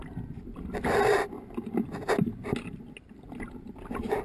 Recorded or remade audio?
recorded